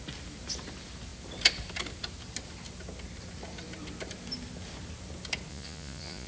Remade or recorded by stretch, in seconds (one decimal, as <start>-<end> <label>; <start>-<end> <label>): 0.0-5.5 recorded; 5.5-6.3 remade